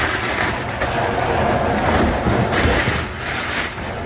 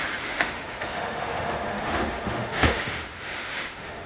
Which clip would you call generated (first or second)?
second